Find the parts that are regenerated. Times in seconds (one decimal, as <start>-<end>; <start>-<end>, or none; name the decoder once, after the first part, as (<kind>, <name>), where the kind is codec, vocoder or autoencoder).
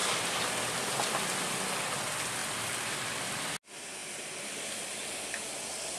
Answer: 2.4-3.5 (vocoder, BigVGAN v2); 4.0-5.1